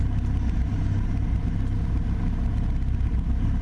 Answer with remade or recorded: recorded